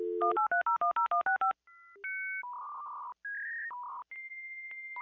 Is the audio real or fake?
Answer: real